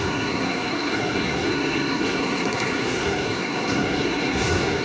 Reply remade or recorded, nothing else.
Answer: remade